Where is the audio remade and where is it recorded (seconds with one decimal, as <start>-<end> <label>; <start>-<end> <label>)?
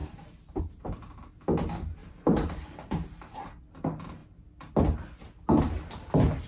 0.0-0.6 remade; 0.6-2.0 recorded; 2.0-3.5 remade; 3.5-6.5 recorded